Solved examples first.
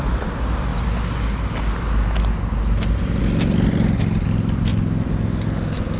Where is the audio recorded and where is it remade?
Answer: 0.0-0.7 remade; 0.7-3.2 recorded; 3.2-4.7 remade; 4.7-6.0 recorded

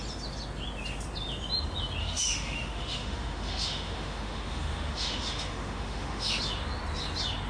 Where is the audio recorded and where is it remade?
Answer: 0.0-2.0 recorded; 2.0-6.4 remade; 6.4-7.5 recorded

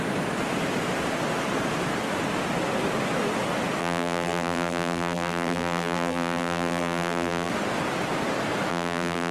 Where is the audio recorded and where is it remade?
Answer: 0.0-3.8 recorded; 3.8-7.5 remade; 7.5-8.7 recorded; 8.7-9.3 remade

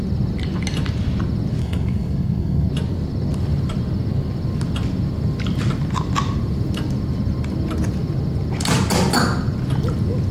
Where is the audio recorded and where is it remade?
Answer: 0.0-1.6 recorded; 1.6-2.7 remade; 2.7-10.3 recorded

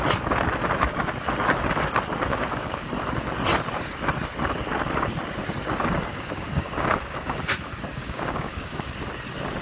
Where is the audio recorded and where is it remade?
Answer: 0.0-2.3 recorded; 2.3-2.9 remade; 2.9-6.1 recorded; 6.1-9.0 remade; 9.0-9.6 recorded

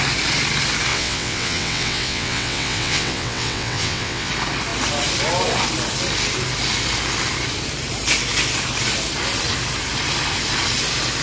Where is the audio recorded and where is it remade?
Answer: 0.0-0.9 recorded; 0.9-4.3 remade; 4.3-11.2 recorded

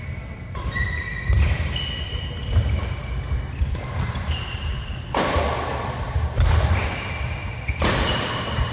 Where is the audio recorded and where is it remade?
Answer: 0.0-8.7 recorded

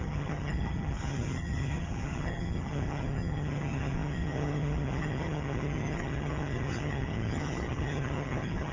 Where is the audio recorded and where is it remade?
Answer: 0.0-8.7 remade